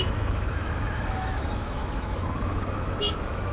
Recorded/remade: remade